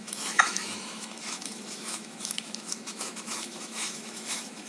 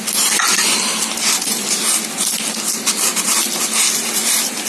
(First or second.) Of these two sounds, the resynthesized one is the first